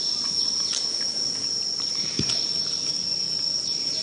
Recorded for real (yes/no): yes